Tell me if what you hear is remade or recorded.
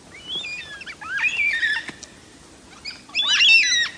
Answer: recorded